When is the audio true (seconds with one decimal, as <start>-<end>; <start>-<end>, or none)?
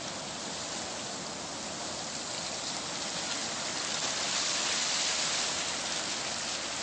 0.0-6.8